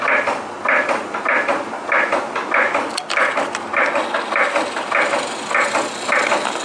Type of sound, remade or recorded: recorded